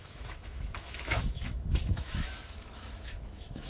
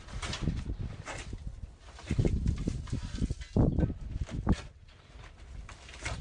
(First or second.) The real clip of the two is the second